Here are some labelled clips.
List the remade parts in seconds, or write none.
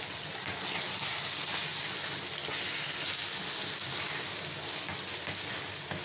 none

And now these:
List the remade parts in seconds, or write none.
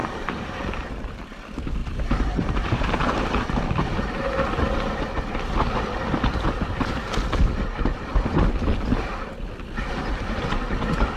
0.0-0.6; 1.8-3.4